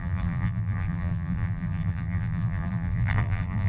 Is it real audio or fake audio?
fake